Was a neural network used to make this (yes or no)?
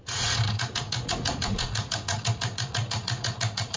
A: yes